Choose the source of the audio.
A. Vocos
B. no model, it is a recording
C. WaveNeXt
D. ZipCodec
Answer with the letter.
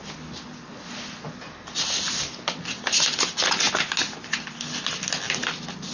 B